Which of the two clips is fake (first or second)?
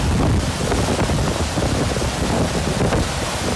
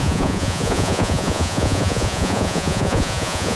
second